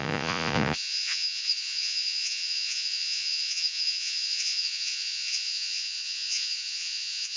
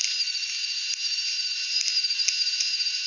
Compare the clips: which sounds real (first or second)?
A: second